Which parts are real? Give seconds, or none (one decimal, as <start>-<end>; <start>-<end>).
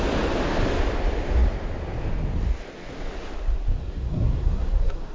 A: 0.0-3.8